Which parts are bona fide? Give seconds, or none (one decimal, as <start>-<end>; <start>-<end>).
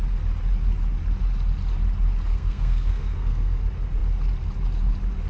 0.0-2.3; 3.6-5.3